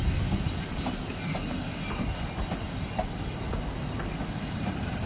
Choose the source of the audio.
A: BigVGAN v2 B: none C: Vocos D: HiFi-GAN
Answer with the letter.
B